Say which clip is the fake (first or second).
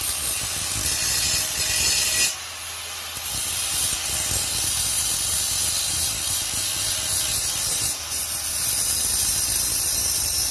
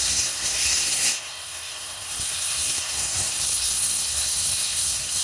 second